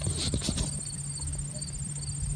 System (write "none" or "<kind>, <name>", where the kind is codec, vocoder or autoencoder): none